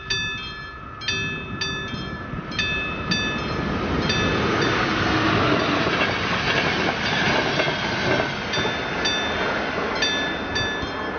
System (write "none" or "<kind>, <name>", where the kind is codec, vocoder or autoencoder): none